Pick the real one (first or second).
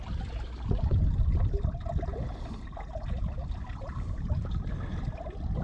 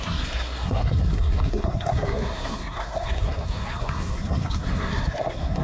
first